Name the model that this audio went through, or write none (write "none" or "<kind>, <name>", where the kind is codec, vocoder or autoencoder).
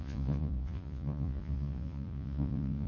vocoder, Vocos